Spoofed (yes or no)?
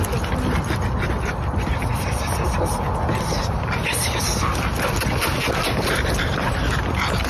no